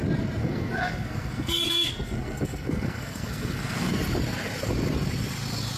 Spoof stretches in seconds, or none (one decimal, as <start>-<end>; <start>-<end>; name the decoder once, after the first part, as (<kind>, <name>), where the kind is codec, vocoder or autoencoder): 0.4-3.9 (codec, SNAC)